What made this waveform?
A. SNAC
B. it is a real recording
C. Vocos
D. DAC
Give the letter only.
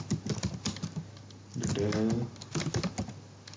B